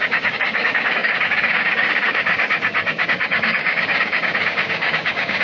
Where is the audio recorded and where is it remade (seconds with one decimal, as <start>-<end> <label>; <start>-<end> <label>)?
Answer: 0.0-5.4 remade